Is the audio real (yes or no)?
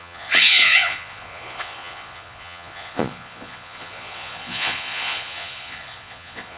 no